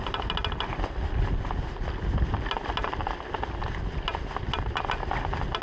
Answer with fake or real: real